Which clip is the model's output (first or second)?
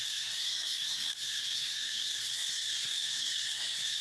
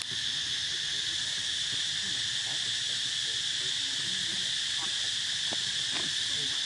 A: first